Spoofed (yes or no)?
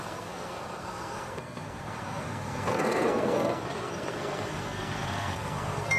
yes